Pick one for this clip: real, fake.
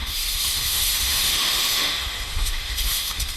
fake